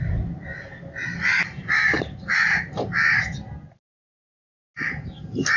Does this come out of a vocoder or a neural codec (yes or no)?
no